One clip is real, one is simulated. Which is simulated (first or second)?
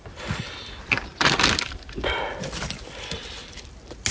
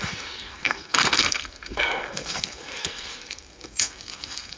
second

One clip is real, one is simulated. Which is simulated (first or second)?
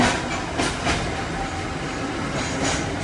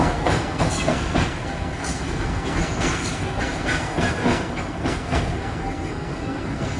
second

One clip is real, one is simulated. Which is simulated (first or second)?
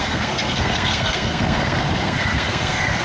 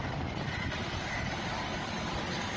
first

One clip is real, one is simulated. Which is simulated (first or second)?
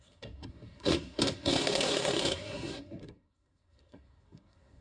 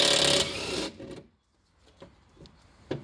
first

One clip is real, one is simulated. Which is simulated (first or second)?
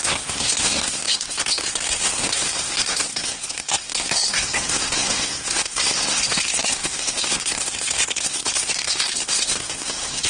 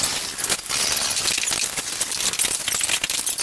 first